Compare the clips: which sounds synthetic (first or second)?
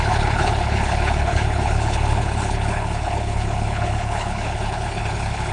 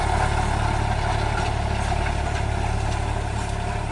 first